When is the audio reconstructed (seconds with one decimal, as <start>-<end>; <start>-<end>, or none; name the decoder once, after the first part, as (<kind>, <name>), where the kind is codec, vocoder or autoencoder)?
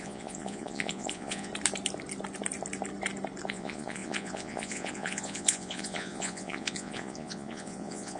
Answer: 0.0-1.5 (vocoder, Vocos); 3.5-8.2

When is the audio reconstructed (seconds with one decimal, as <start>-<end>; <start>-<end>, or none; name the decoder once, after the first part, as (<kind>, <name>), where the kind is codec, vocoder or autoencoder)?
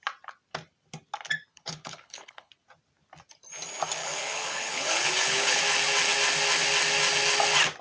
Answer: 1.5-2.5 (codec, HILCodec); 4.0-5.6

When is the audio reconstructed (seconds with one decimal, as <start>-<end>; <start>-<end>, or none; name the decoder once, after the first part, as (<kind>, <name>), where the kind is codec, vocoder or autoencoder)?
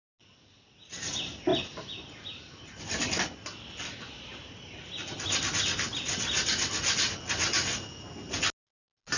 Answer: none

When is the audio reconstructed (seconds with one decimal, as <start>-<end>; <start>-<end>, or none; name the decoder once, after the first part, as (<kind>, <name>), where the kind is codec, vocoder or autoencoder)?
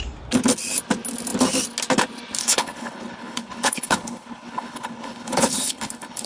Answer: 2.4-6.3 (codec, HILCodec)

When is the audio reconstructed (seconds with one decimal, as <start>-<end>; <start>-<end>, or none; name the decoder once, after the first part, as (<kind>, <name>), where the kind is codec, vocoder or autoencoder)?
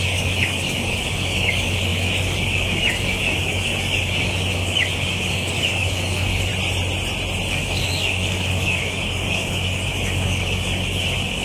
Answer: 0.0-6.5 (codec, DAC); 7.5-11.4